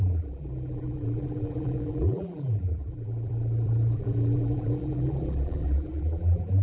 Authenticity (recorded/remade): remade